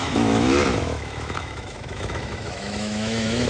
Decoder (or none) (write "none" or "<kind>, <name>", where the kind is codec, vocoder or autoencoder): autoencoder, DAC-VAE